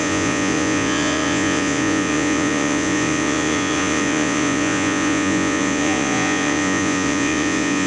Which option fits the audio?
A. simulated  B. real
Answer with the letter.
A